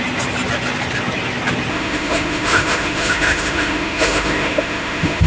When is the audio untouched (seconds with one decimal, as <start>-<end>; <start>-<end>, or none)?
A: 0.0-1.7